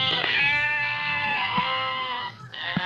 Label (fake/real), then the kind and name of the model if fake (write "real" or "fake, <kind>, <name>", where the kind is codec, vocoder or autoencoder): fake, codec, SNAC